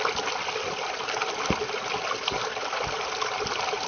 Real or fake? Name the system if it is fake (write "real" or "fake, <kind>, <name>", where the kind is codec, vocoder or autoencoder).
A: real